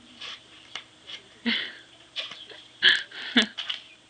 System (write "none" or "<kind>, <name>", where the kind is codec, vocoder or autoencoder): vocoder, BigVGAN v2